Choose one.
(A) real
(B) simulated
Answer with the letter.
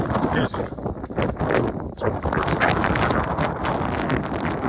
A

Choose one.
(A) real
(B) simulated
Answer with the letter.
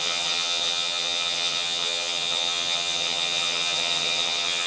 B